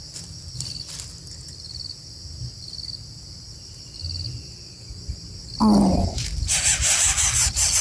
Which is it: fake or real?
real